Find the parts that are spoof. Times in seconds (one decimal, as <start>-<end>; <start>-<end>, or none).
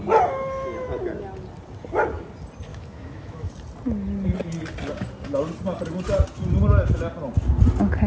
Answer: 2.7-3.5